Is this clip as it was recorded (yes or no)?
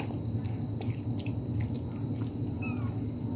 yes